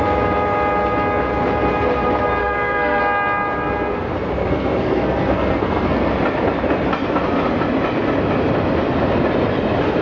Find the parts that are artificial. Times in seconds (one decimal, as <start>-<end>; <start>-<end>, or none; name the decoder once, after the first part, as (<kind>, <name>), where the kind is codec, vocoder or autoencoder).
2.4-3.0 (codec, SNAC); 4.4-6.1